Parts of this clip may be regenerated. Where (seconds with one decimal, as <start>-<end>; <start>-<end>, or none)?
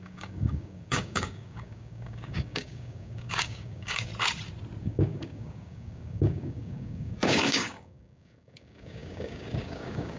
0.0-4.1; 4.8-10.2